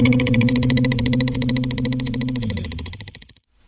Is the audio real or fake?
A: fake